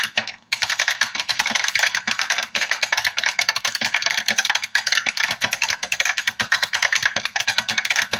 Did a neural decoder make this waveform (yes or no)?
yes